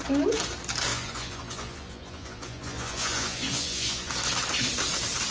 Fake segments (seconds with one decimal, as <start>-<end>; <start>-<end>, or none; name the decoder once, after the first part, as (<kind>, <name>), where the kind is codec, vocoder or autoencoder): 0.9-4.1 (vocoder, Vocos)